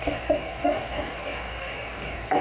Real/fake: fake